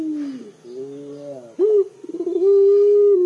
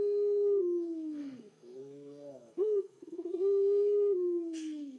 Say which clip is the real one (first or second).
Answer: first